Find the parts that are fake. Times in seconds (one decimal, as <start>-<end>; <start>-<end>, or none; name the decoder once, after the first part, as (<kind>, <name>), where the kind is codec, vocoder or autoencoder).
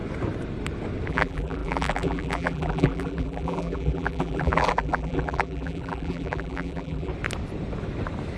1.1-7.1 (vocoder, BigVGAN v2)